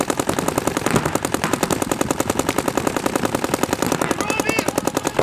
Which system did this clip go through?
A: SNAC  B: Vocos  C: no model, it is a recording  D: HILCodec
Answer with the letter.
C